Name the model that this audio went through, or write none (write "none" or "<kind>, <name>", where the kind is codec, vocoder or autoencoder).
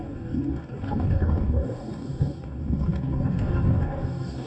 codec, DAC